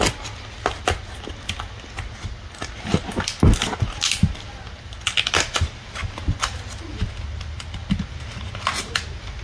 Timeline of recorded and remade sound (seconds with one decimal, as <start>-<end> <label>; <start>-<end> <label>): 0.0-9.4 recorded